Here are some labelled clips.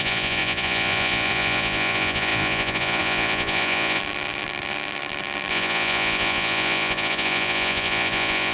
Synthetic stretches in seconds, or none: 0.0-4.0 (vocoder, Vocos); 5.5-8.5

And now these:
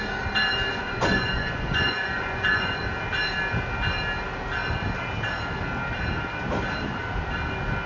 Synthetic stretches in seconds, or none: 0.7-2.8 (vocoder, Vocos)

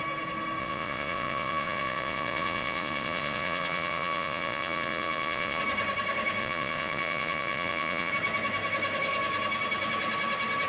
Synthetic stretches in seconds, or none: 0.6-5.6 (vocoder, Vocos); 6.4-8.1

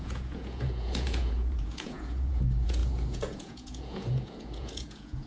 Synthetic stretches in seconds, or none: 0.0-5.3 (vocoder, Vocos)

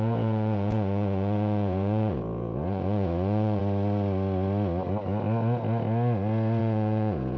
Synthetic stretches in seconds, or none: 0.0-3.6 (vocoder, Vocos); 6.6-7.4

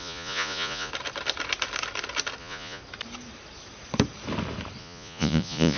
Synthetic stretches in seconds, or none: 0.0-0.9 (vocoder, Vocos); 2.4-2.8; 4.8-5.8

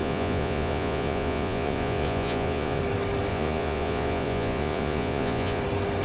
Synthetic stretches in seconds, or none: 0.0-2.8 (vocoder, Vocos); 3.3-5.6